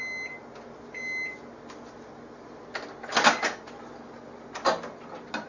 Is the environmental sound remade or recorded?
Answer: recorded